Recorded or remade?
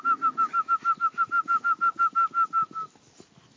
recorded